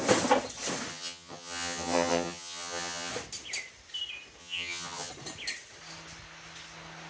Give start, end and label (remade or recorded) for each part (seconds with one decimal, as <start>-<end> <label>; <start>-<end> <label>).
0.0-0.9 recorded; 0.9-3.1 remade; 3.1-4.4 recorded; 4.4-5.1 remade; 5.1-7.1 recorded